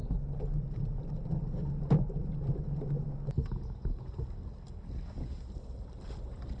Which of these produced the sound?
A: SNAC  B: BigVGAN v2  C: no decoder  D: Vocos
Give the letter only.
C